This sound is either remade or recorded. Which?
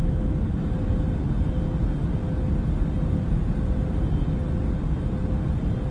recorded